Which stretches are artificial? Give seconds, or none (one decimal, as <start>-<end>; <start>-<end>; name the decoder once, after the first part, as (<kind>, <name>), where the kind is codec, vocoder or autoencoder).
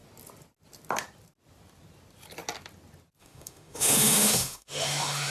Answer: 3.2-5.3 (autoencoder, DAC-VAE)